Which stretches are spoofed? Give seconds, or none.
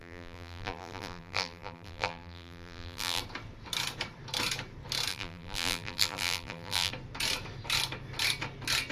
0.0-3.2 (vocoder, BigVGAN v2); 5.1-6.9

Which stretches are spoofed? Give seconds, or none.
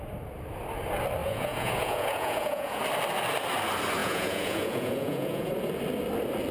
1.2-2.8 (vocoder, Vocos); 4.0-5.5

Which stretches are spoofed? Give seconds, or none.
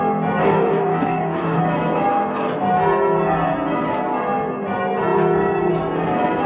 0.4-1.6 (codec, DAC)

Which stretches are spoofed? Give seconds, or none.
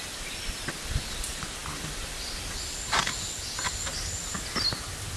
none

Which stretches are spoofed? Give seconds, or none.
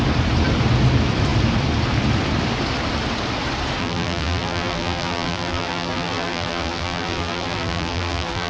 3.8-8.5 (vocoder, BigVGAN v2)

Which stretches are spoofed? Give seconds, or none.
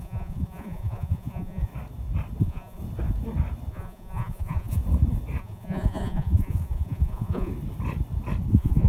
0.0-1.7 (vocoder, Vocos); 2.4-2.8; 3.7-4.8; 5.4-7.5; 8.5-8.9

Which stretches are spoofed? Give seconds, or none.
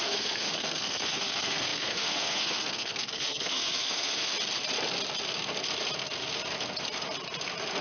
0.0-4.3 (codec, SNAC)